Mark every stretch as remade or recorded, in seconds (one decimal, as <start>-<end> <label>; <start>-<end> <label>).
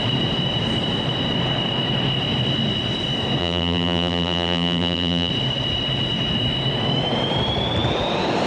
0.0-3.4 recorded; 3.4-5.3 remade; 5.3-8.5 recorded